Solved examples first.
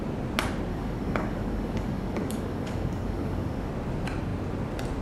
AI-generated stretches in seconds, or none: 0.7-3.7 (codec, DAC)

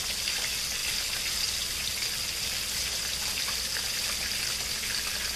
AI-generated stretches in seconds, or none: none

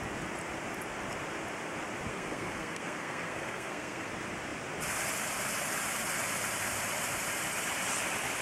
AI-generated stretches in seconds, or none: 2.1-4.1 (codec, SNAC)

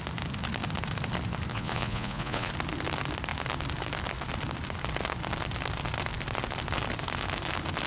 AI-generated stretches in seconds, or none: 1.5-2.5 (vocoder, Vocos)

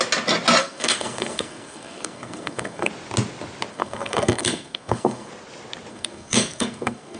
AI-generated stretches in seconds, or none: 0.6-2.9 (codec, SNAC); 3.7-5.3; 5.9-7.2

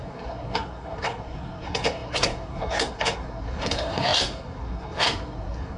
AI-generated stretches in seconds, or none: 0.0-5.8 (codec, SNAC)